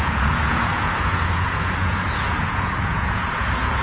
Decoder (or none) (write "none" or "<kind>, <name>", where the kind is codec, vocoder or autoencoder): vocoder, Vocos